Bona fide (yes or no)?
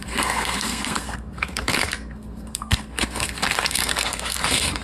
no